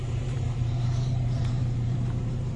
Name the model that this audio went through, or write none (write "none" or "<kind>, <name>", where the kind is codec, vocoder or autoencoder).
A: vocoder, BigVGAN v2